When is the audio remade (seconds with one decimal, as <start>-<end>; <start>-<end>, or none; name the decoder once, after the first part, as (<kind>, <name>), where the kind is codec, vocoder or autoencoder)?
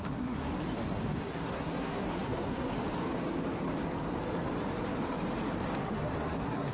0.0-0.5 (codec, SNAC); 1.2-2.7; 5.8-6.7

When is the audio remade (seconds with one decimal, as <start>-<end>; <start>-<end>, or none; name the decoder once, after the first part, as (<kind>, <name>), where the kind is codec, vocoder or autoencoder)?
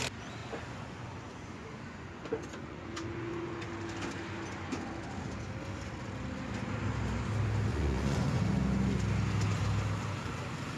0.4-3.7 (vocoder, Vocos); 7.7-8.4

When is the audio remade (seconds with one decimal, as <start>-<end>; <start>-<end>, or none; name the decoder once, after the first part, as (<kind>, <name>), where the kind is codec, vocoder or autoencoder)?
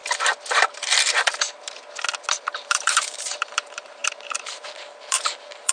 2.3-5.7 (vocoder, BigVGAN v2)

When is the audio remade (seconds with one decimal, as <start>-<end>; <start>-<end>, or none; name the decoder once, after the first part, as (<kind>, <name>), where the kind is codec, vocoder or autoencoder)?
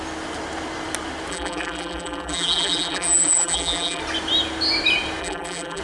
1.3-4.0 (vocoder, BigVGAN v2); 5.2-5.8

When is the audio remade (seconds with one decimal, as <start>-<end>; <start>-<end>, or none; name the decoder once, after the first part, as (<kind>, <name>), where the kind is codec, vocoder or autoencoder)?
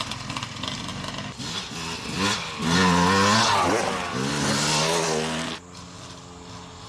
none